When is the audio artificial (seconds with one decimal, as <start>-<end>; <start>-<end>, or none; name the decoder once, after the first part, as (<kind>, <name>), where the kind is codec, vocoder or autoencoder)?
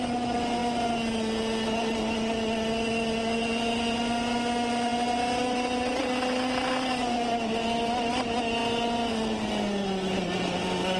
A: none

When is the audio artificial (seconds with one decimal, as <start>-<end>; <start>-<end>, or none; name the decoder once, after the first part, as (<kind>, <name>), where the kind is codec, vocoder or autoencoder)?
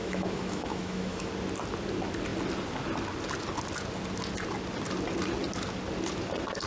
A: 0.0-1.3 (autoencoder, DAC-VAE)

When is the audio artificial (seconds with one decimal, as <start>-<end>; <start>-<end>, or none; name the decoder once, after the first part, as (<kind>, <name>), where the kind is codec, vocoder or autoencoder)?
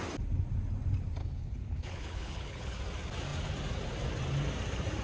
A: 1.2-2.8 (codec, HILCodec)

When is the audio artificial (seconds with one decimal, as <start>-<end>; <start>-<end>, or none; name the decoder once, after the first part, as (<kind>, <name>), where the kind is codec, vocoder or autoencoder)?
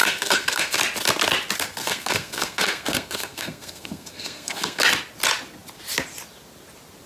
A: 0.0-0.8 (codec, SNAC); 1.8-4.8